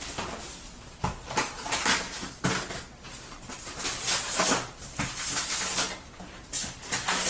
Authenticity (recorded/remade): recorded